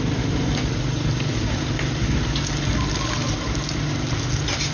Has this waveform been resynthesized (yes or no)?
no